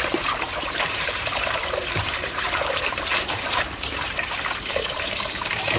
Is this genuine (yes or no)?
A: no